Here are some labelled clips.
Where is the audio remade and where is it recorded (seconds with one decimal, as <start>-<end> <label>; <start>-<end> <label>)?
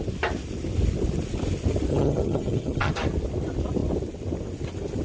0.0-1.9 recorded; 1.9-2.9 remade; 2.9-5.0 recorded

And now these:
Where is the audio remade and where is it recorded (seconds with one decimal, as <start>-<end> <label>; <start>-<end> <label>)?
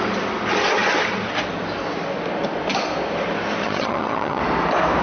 0.0-3.6 recorded; 3.6-4.4 remade; 4.4-5.0 recorded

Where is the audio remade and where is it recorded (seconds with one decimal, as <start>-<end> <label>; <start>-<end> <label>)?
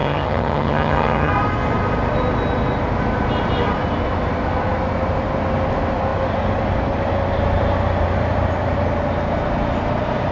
0.0-1.3 remade; 1.3-10.3 recorded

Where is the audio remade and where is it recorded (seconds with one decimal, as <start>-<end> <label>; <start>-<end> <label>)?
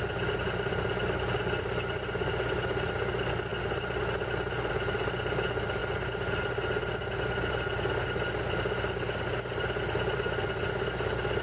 0.0-11.4 recorded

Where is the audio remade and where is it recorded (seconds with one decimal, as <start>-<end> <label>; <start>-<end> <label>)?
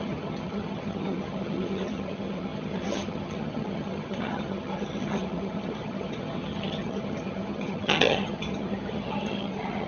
0.0-9.9 remade